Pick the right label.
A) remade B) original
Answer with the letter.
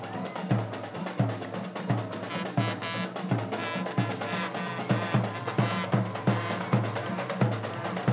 B